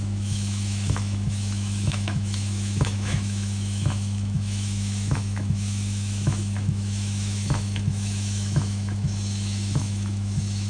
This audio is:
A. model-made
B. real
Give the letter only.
A